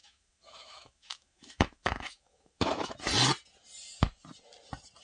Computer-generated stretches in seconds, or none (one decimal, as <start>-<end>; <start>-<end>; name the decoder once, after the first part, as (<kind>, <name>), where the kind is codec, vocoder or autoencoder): 0.0-3.0 (autoencoder, DAC-VAE)